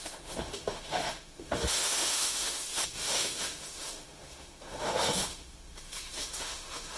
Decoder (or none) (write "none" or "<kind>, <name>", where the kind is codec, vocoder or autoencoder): autoencoder, DAC-VAE